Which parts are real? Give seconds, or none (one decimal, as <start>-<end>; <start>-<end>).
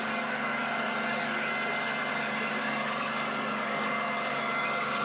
1.5-2.1